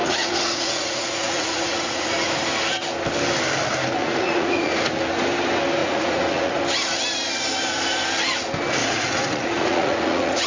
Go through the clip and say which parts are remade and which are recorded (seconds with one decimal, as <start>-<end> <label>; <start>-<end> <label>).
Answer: 0.0-2.3 remade; 2.3-4.0 recorded; 4.0-4.9 remade; 4.9-5.8 recorded; 5.8-6.6 remade; 6.6-8.8 recorded; 8.8-10.5 remade